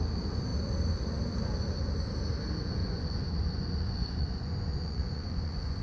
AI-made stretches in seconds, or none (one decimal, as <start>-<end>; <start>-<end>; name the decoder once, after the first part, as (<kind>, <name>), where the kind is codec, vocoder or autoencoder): 2.8-5.8 (vocoder, Vocos)